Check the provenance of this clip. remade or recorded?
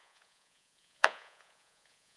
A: remade